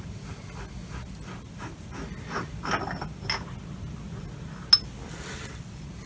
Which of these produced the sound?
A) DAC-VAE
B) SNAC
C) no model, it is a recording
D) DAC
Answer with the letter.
C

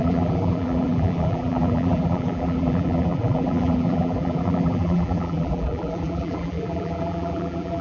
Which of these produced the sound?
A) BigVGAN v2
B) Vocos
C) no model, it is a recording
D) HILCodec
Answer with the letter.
A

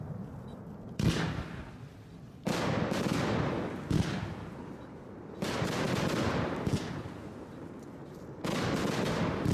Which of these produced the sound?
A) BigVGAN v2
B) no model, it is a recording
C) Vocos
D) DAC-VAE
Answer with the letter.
B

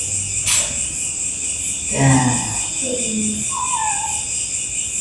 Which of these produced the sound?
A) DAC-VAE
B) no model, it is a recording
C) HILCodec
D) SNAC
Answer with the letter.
B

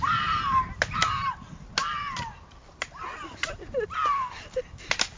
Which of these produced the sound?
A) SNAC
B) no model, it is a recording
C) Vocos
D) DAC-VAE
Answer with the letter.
B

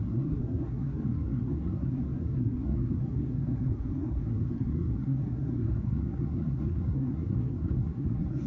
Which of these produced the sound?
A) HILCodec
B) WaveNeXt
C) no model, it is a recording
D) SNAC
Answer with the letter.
D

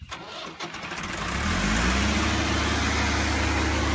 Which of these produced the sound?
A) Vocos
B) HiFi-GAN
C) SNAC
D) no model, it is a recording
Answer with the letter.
D